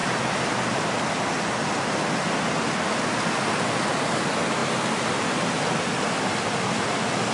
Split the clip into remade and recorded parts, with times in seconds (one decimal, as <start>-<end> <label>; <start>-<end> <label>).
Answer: 0.0-7.3 recorded